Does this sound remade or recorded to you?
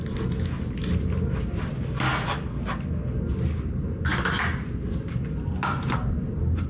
recorded